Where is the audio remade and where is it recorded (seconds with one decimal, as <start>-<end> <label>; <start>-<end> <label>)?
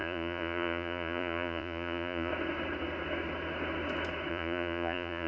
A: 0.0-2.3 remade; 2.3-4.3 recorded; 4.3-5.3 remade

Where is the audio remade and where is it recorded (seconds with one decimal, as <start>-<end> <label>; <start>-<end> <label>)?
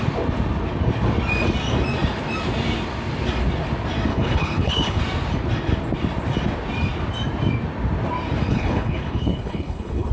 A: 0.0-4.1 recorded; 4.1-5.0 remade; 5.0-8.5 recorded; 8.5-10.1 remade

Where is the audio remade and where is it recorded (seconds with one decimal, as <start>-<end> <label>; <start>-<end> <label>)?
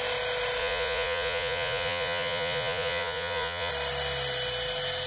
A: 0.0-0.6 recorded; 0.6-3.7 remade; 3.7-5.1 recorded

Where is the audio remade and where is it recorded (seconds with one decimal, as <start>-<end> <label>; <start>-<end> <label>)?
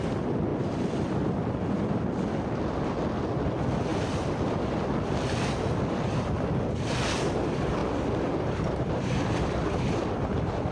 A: 0.0-10.7 recorded